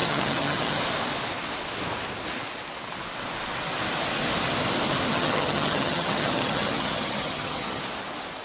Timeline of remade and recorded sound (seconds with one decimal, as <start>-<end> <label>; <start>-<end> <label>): 0.0-0.8 remade; 0.8-5.1 recorded; 5.1-7.8 remade; 7.8-8.4 recorded